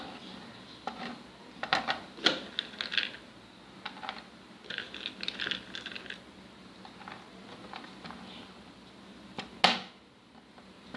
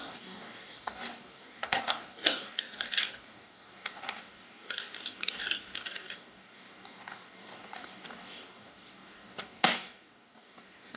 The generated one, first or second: second